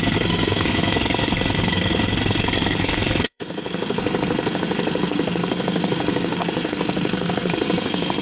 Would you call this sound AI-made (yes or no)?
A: yes